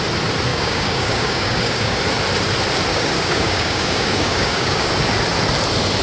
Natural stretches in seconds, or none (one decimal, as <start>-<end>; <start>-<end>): 0.0-0.5; 2.0-2.9; 4.9-6.0